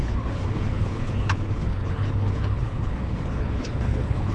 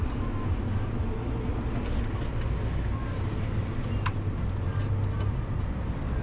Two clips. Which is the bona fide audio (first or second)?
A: second